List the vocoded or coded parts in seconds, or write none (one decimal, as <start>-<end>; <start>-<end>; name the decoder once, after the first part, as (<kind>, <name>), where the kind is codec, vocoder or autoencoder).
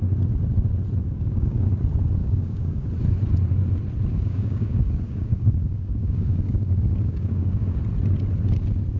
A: 1.0-1.7 (codec, DAC); 2.2-2.9; 4.1-7.8